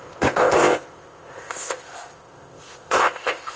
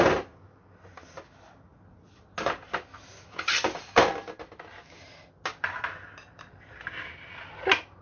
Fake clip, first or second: first